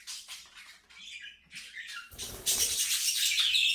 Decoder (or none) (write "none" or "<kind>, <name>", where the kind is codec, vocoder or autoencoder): vocoder, BigVGAN v2